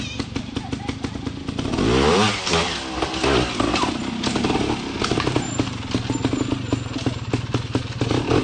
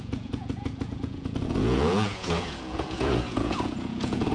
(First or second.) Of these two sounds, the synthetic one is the second